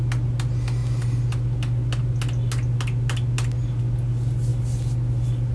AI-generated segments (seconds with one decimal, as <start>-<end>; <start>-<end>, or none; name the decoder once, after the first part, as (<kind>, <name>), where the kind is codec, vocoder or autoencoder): none